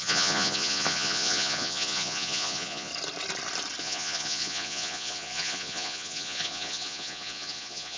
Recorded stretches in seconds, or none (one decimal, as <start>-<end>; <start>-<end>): 2.9-3.8